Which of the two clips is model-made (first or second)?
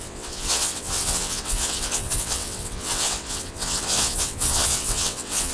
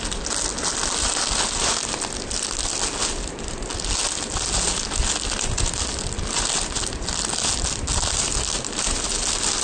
first